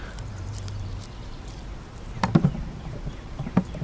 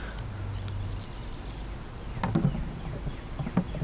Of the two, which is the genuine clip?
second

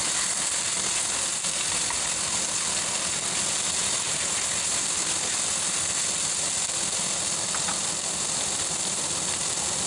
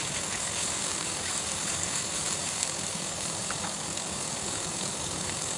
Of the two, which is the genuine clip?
first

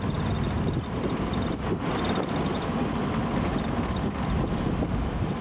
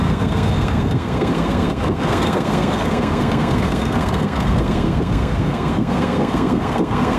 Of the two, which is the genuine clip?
first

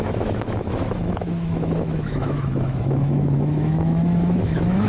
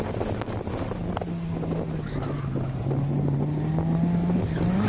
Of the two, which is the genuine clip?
second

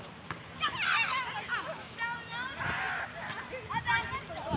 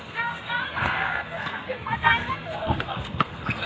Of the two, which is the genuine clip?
first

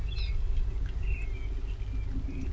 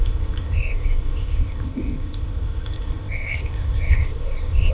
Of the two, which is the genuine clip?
first